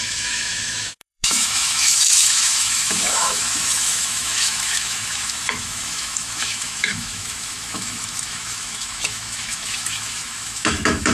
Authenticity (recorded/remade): remade